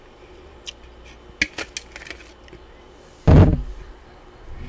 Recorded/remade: recorded